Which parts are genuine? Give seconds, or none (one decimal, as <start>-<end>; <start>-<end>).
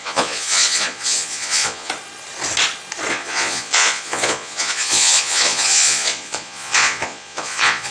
1.9-3.1